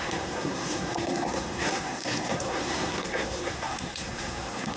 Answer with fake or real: fake